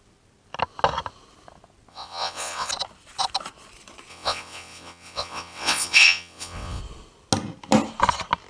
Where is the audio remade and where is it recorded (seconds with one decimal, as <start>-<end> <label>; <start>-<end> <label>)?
0.0-1.9 recorded; 1.9-2.7 remade; 2.7-4.1 recorded; 4.1-6.8 remade; 6.8-8.5 recorded